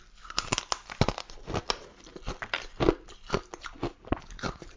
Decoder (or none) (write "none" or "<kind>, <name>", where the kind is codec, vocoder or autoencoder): none